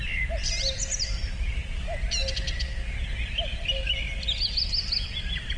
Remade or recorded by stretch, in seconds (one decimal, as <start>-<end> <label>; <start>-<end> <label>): 0.0-5.6 recorded